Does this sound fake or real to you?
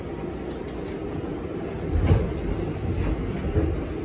real